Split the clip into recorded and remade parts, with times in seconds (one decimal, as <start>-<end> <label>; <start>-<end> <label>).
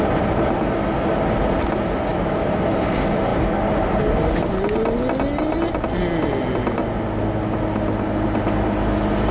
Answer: 0.0-9.3 recorded